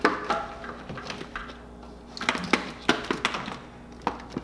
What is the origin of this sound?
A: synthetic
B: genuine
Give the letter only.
B